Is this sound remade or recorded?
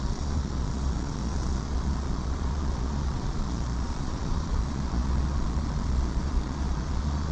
remade